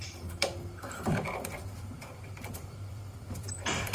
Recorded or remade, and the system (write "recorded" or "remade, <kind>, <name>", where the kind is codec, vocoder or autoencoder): remade, vocoder, BigVGAN v2